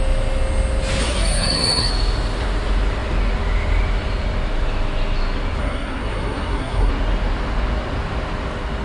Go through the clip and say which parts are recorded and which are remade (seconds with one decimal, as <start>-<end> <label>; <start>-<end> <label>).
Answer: 0.0-1.0 recorded; 1.0-1.9 remade; 1.9-5.6 recorded; 5.6-6.9 remade; 6.9-8.8 recorded